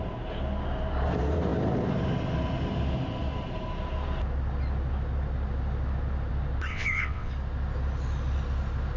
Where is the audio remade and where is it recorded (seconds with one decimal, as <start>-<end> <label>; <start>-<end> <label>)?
0.0-6.7 recorded; 6.7-7.3 remade; 7.3-9.0 recorded